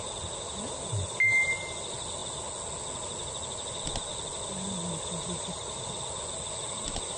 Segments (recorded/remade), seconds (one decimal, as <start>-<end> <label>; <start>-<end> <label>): 0.0-7.2 recorded